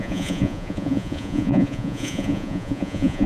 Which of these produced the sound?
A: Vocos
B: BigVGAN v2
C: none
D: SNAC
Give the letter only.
A